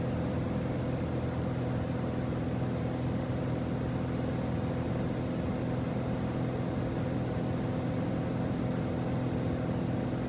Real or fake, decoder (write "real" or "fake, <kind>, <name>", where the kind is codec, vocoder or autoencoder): real